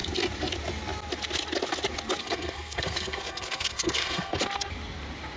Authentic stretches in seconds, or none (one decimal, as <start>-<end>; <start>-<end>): 0.0-2.2; 4.4-5.4